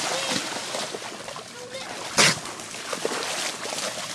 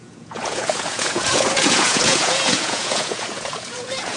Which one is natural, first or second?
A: first